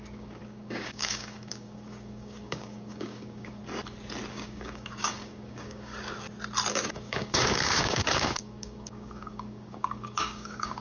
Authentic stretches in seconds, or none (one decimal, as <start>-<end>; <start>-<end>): 3.6-4.3; 5.9-6.7